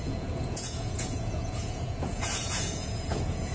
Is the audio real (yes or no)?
no